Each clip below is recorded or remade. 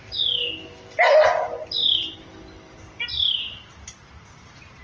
recorded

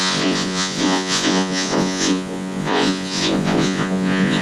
remade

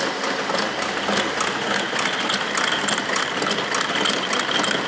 recorded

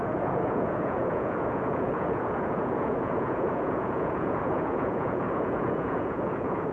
remade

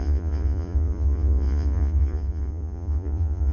remade